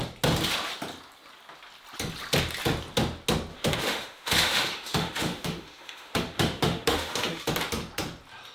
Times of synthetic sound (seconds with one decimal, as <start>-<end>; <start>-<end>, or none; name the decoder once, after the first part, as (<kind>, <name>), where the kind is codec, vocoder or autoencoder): 3.5-7.4 (autoencoder, DAC-VAE)